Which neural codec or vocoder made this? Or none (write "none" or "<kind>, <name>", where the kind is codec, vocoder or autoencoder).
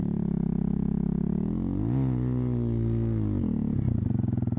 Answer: none